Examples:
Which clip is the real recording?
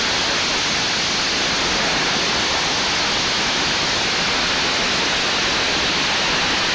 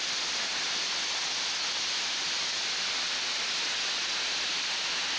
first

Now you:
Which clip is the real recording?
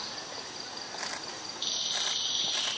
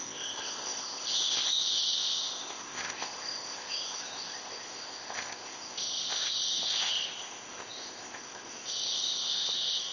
first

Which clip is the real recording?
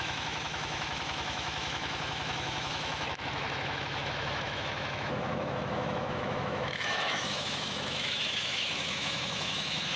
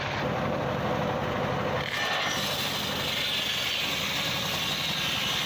second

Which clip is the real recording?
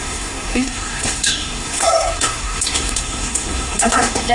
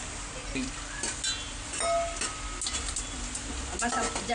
second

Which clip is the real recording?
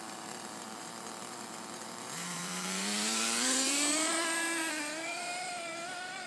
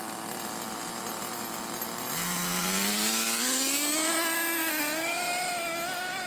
second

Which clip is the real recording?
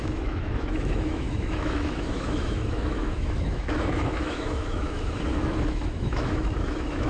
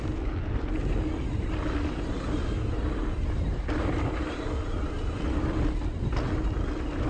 second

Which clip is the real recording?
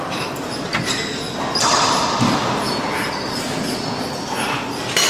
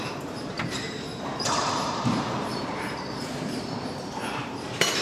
first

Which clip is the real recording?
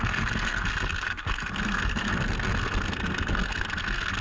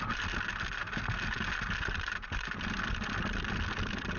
second